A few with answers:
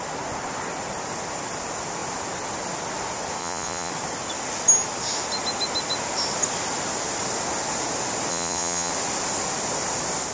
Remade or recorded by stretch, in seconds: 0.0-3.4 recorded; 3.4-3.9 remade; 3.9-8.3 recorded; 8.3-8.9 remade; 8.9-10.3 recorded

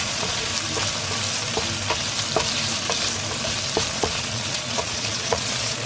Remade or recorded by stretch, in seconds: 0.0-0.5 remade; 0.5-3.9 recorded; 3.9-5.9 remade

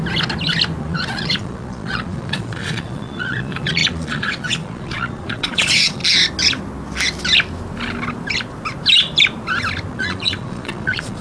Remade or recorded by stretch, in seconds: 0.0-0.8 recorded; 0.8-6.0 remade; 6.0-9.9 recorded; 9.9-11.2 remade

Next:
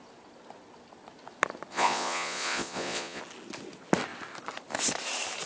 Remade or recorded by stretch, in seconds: 0.0-1.7 recorded; 1.7-3.2 remade; 3.2-5.5 recorded

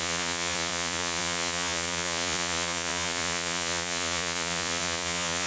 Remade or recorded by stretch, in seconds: 0.0-5.5 remade

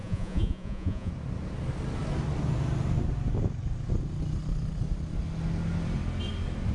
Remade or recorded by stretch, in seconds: 0.0-1.1 remade; 1.1-6.7 recorded